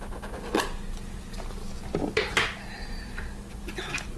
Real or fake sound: real